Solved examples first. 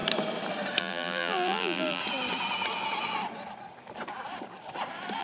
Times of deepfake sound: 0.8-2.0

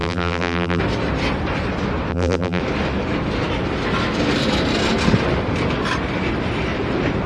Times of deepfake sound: 0.0-0.8; 2.1-2.6

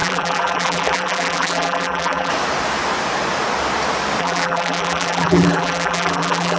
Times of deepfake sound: 0.0-2.3; 4.2-6.6

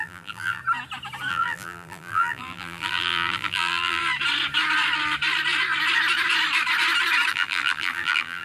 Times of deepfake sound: 0.0-0.6; 1.3-4.0; 7.3-8.4

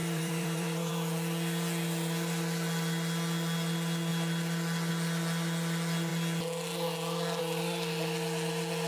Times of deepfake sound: 0.0-0.9